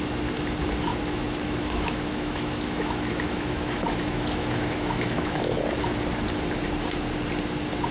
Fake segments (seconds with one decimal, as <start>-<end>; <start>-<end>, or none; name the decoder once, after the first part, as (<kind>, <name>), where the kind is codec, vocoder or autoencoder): 0.9-5.6 (autoencoder, DAC-VAE)